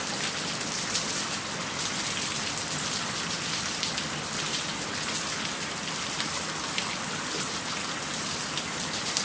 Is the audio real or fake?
real